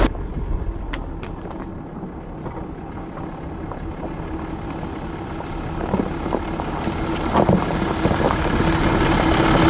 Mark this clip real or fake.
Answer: real